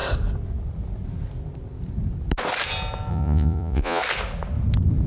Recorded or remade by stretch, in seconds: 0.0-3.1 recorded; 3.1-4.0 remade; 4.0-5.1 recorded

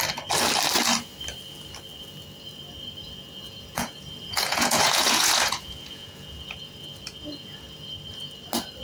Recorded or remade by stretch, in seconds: 0.0-3.0 recorded; 3.0-7.9 remade; 7.9-8.8 recorded